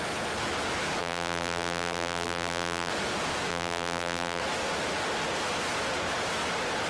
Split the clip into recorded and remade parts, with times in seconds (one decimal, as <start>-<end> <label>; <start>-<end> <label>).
0.0-1.0 recorded; 1.0-2.9 remade; 2.9-3.5 recorded; 3.5-4.4 remade; 4.4-6.9 recorded